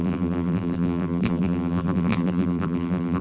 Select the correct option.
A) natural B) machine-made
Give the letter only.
B